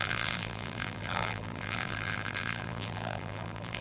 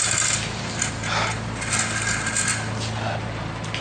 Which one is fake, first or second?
first